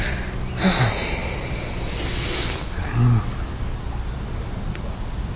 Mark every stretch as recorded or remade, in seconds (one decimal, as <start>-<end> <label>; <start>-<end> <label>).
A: 0.0-5.4 recorded